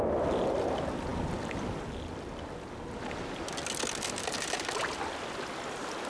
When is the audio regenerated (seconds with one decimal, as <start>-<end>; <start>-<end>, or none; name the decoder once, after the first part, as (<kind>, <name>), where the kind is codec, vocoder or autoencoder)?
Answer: none